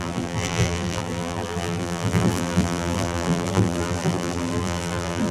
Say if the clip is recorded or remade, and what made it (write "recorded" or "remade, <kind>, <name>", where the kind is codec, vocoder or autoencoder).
remade, vocoder, BigVGAN v2